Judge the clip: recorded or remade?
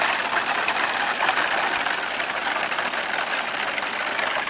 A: recorded